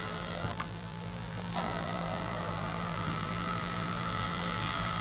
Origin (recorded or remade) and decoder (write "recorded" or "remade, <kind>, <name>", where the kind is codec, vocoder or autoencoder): remade, vocoder, BigVGAN v2